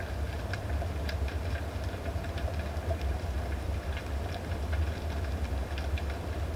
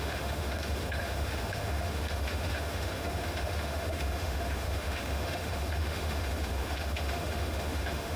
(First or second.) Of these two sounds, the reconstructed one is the second